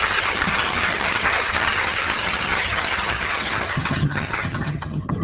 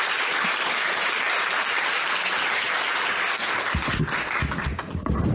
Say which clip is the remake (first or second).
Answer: first